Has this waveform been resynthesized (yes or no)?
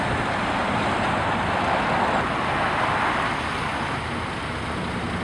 no